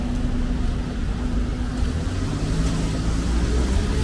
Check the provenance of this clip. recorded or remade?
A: recorded